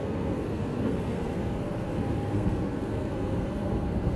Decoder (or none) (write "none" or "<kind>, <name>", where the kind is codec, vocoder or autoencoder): codec, SNAC